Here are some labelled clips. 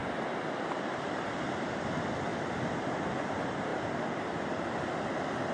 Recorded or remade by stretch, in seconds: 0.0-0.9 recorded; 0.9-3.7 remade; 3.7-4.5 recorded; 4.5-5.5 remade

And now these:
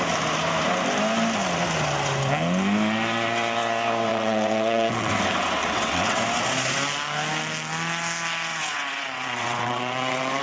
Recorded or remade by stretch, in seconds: 0.0-4.1 recorded; 4.1-5.1 remade; 5.1-5.6 recorded; 5.6-6.2 remade; 6.2-8.5 recorded; 8.5-10.4 remade